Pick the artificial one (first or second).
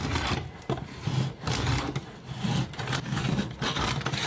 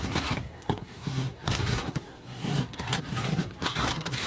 second